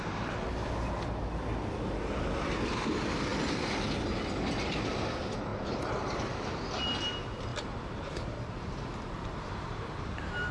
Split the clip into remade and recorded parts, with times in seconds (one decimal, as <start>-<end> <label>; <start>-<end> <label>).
0.0-7.5 recorded; 7.5-10.5 remade